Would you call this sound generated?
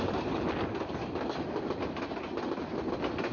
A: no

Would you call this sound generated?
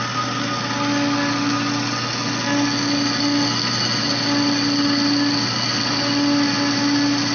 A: no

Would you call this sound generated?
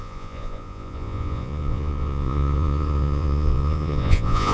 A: yes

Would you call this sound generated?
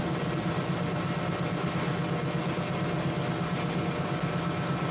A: no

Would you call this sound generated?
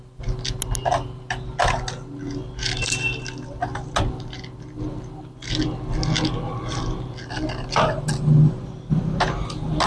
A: no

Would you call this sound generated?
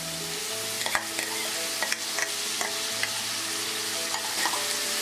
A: no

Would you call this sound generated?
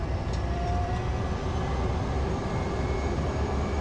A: yes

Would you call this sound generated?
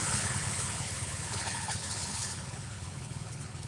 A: yes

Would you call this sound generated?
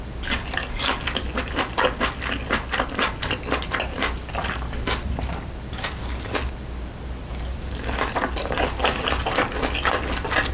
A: no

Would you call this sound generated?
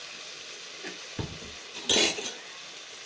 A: no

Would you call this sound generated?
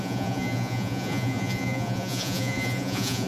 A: yes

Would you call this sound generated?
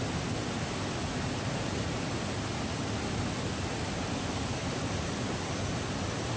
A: no